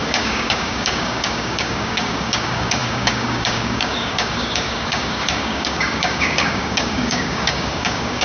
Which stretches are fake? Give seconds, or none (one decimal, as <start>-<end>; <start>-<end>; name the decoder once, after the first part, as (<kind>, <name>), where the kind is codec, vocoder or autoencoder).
0.0-8.2 (codec, DAC)